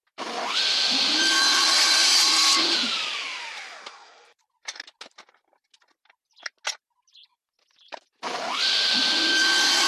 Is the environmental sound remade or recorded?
recorded